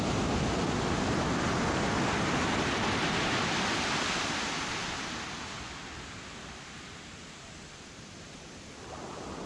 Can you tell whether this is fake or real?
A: real